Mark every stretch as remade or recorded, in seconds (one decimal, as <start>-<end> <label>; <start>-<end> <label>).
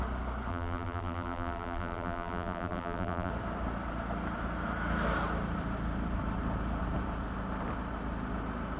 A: 0.0-0.5 recorded; 0.5-3.3 remade; 3.3-8.8 recorded